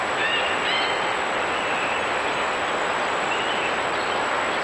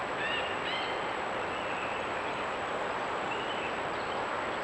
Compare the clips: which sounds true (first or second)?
first